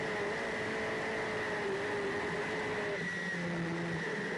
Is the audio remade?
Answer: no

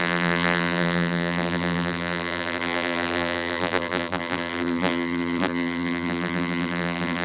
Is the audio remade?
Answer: yes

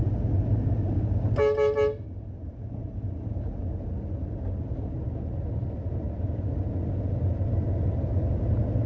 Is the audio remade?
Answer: no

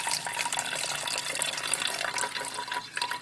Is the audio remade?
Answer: no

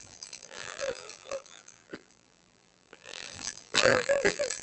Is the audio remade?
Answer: yes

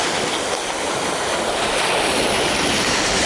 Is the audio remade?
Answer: no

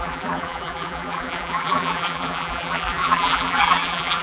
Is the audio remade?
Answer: yes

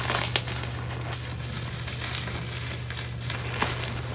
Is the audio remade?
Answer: no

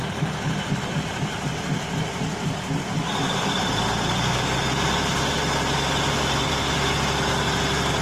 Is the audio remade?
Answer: no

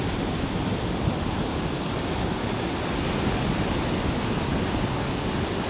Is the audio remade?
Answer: no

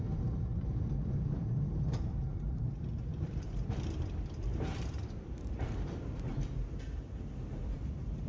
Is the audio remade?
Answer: yes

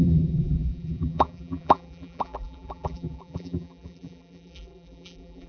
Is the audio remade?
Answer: yes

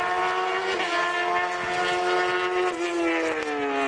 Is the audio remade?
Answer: no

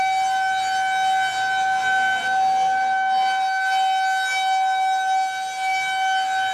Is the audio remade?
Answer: no